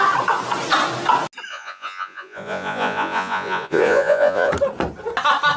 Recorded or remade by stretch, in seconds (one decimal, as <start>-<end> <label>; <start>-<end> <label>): 0.0-1.5 recorded; 1.5-4.5 remade; 4.5-5.6 recorded